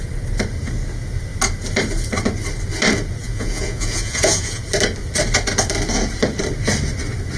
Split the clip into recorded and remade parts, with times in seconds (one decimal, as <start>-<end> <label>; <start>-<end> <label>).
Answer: 0.0-3.2 recorded; 3.2-4.6 remade; 4.6-7.4 recorded